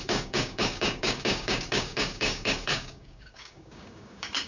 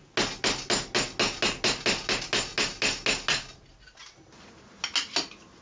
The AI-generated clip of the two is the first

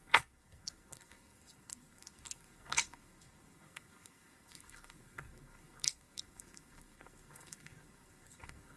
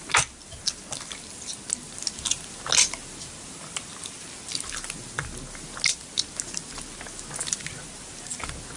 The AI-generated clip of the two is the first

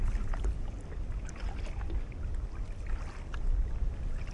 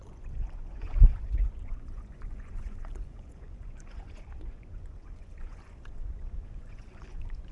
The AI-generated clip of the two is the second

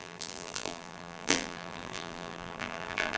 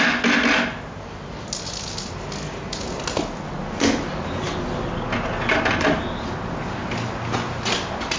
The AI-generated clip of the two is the first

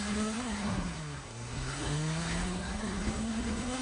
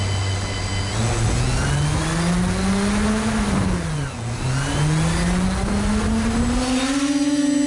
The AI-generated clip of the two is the first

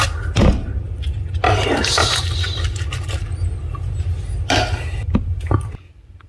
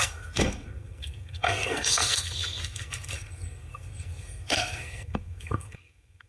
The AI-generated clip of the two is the second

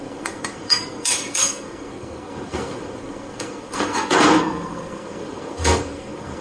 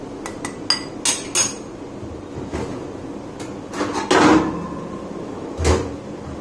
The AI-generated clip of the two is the first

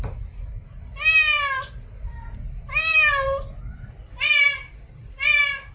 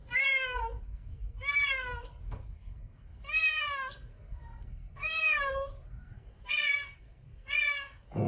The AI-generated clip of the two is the second